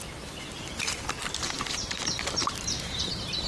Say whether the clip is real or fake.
fake